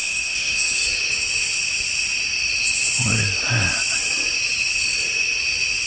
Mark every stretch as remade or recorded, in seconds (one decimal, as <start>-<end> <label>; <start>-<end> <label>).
0.0-0.8 remade; 0.8-5.9 recorded